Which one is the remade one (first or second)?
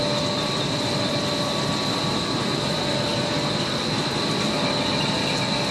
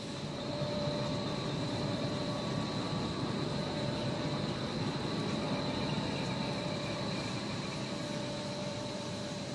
second